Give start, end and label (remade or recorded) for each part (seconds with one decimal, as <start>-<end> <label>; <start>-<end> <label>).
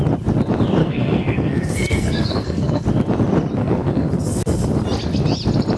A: 0.0-0.8 recorded; 0.8-2.8 remade; 2.8-3.6 recorded; 3.6-4.1 remade; 4.1-5.8 recorded